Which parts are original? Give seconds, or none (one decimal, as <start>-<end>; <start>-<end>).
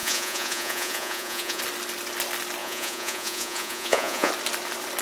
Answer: 1.6-2.6; 4.3-5.0